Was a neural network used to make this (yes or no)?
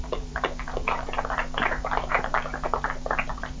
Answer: yes